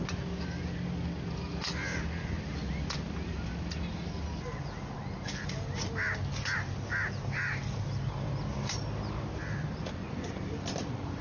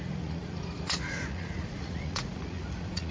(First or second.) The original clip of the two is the first